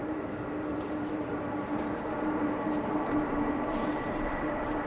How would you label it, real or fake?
fake